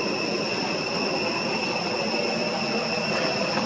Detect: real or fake real